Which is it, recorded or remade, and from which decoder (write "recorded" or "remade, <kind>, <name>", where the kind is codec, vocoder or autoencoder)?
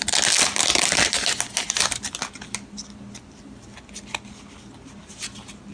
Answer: recorded